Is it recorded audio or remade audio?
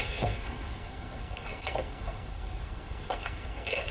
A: remade